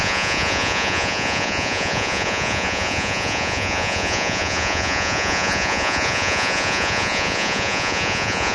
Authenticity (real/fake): fake